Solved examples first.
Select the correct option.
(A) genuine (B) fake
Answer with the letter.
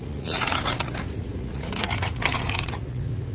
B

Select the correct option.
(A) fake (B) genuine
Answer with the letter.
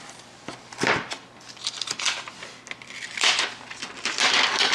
B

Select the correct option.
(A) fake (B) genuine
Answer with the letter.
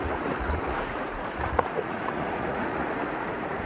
A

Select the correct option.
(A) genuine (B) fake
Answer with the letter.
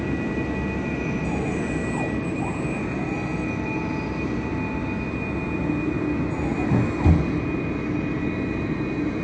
A